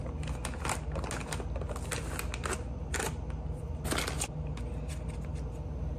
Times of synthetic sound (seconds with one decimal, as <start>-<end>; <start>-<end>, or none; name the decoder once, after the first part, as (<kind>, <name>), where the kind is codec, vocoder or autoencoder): none